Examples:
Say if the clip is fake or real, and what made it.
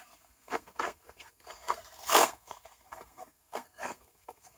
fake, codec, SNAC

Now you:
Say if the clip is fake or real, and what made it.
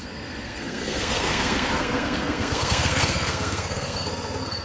fake, codec, SNAC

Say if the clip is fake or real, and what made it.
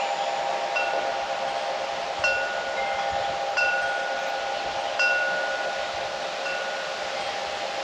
real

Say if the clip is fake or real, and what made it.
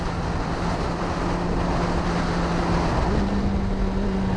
real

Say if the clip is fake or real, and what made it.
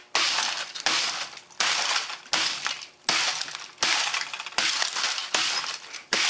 real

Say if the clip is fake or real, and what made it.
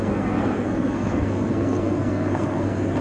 fake, codec, SNAC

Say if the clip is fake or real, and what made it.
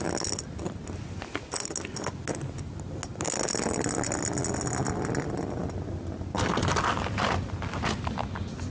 real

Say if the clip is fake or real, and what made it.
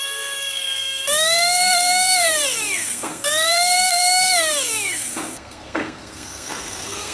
fake, codec, SNAC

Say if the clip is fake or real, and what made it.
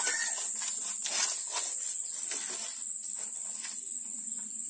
real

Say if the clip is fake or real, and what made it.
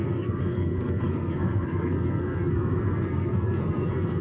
fake, codec, SNAC